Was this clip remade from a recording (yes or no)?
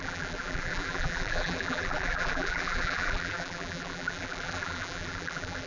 yes